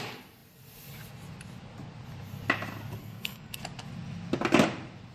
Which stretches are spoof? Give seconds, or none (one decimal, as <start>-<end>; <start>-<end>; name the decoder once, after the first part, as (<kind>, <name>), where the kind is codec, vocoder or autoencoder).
3.0-3.6 (codec, SNAC)